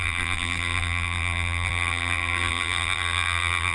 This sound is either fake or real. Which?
fake